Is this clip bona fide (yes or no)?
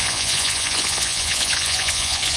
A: no